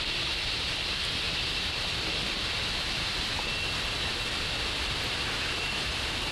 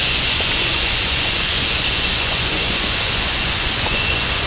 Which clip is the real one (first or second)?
first